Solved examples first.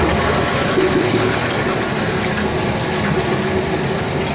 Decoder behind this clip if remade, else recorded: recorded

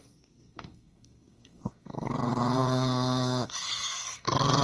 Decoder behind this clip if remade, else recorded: remade, codec, SNAC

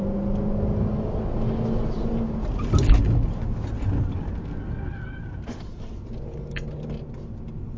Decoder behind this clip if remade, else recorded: recorded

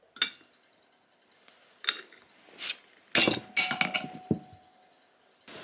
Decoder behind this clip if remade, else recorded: recorded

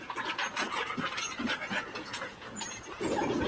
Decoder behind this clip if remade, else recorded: remade, vocoder, Vocos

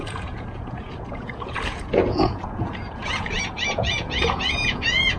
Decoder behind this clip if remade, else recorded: remade, vocoder, Vocos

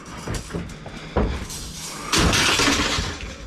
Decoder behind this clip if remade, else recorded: recorded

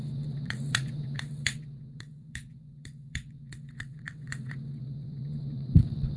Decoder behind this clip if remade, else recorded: remade, vocoder, WaveNeXt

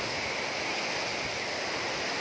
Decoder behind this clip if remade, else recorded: recorded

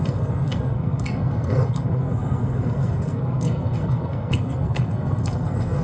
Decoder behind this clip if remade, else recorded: remade, codec, SNAC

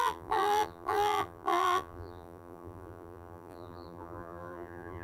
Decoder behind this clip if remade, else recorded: remade, vocoder, BigVGAN v2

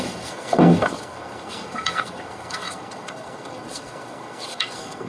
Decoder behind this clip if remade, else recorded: remade, codec, SNAC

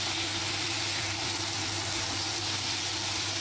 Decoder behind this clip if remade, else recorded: remade, vocoder, BigVGAN v2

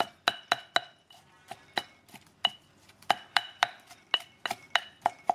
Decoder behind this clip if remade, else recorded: recorded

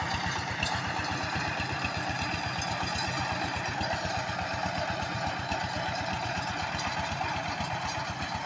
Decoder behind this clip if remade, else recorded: recorded